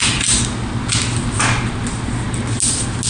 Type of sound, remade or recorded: recorded